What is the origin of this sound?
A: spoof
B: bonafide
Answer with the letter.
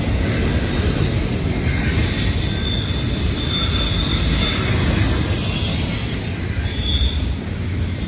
B